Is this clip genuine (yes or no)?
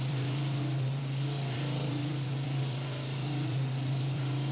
no